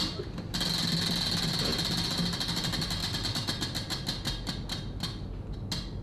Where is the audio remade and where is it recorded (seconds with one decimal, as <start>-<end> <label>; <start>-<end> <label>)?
0.0-6.0 recorded